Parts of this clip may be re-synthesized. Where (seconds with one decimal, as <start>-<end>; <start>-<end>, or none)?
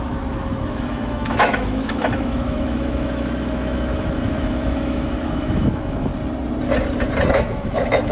0.0-6.1; 7.3-8.1